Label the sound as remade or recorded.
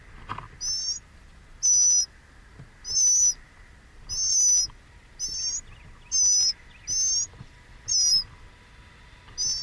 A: recorded